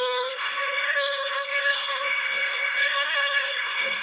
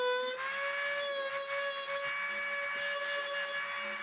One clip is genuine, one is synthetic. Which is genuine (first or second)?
second